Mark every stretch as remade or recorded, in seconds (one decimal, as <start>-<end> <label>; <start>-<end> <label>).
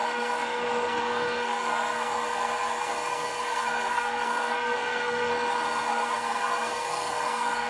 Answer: 0.0-5.3 remade; 5.3-5.9 recorded; 5.9-7.7 remade